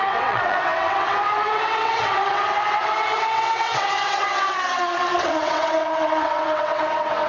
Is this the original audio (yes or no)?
no